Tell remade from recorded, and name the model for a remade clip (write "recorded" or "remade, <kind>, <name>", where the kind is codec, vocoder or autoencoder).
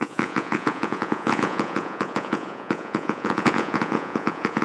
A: remade, vocoder, Vocos